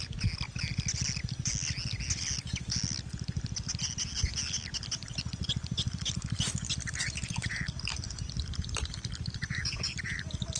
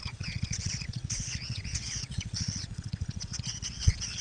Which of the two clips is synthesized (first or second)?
second